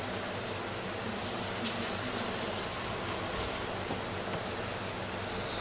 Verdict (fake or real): real